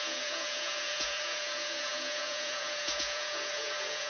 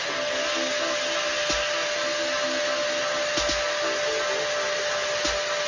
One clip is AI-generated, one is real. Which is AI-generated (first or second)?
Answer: first